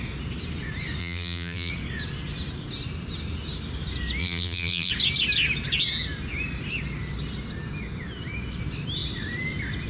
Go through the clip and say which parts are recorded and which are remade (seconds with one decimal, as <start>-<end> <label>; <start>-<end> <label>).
0.0-1.0 recorded; 1.0-1.7 remade; 1.7-4.2 recorded; 4.2-4.9 remade; 4.9-9.9 recorded